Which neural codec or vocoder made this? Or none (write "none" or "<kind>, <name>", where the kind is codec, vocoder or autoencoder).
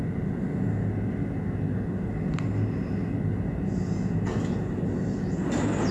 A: none